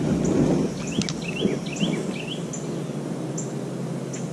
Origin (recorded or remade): recorded